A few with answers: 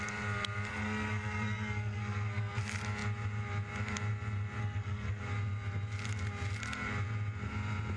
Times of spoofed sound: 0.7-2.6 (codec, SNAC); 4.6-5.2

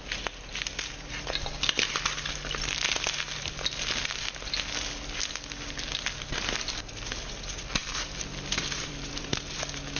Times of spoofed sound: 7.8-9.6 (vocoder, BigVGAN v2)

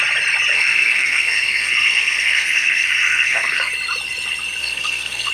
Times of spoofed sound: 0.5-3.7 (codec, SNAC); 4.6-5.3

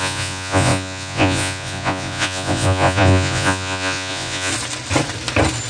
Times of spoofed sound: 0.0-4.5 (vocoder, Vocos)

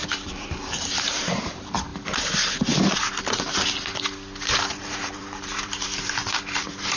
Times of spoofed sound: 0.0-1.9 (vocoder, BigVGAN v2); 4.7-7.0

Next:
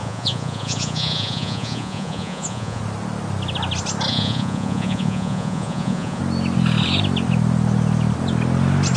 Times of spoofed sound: 0.0-2.8 (vocoder, Vocos); 4.1-6.2